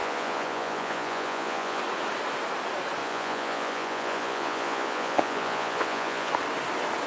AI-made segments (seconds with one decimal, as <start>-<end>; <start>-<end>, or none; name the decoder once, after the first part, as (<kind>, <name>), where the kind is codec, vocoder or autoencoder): 0.0-1.8 (vocoder, Vocos); 3.0-6.3